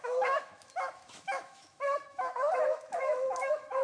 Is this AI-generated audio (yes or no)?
yes